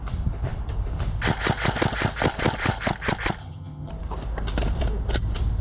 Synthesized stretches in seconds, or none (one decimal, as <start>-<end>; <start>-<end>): 3.4-3.9